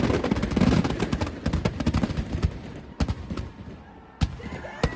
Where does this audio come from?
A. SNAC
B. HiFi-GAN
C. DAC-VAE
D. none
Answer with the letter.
D